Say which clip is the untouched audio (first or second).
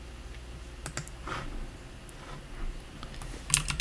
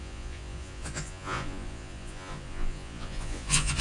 first